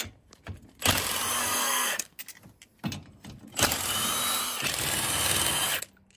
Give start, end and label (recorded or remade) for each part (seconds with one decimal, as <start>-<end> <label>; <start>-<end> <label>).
0.0-1.4 recorded; 1.4-2.2 remade; 2.2-6.2 recorded